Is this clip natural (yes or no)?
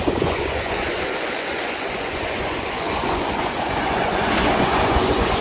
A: no